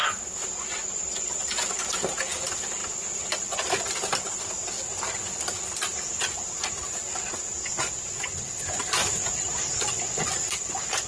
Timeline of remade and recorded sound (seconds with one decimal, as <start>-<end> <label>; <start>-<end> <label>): 0.0-9.0 recorded; 9.0-10.5 remade; 10.5-11.1 recorded